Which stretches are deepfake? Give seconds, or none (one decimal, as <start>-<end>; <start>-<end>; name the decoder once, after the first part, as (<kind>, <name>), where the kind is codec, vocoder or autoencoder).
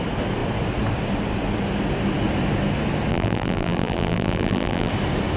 3.1-4.9 (vocoder, BigVGAN v2)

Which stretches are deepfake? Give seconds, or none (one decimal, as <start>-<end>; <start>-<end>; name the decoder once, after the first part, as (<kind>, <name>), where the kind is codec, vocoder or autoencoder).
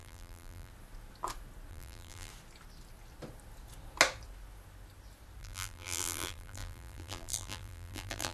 0.0-0.7 (vocoder, BigVGAN v2); 1.7-2.3; 5.4-8.3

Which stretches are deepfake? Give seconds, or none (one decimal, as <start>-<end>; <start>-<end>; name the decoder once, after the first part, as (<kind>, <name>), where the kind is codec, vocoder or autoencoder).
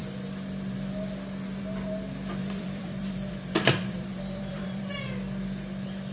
2.4-4.8 (vocoder, BigVGAN v2)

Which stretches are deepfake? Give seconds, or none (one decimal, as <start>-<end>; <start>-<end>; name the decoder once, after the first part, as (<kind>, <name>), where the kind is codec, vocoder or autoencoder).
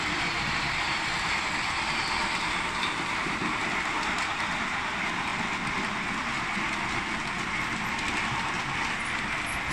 0.0-5.3 (vocoder, BigVGAN v2)